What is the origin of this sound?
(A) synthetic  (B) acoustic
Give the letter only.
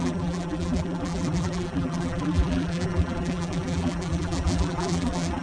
A